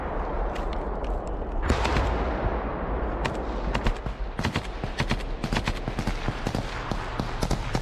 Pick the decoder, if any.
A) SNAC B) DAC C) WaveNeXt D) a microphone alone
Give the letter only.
D